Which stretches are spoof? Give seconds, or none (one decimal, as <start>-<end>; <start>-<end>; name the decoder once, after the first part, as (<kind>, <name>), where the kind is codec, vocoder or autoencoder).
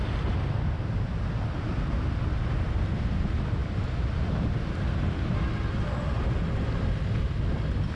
none